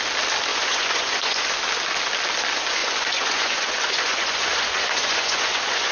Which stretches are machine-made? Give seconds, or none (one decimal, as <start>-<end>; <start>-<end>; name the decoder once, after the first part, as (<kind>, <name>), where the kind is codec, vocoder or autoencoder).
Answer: 0.5-1.4 (vocoder, Vocos); 2.8-5.9